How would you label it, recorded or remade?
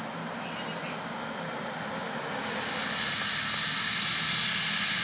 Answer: recorded